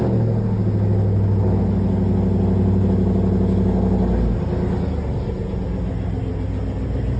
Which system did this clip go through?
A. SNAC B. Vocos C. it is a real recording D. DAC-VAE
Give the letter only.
C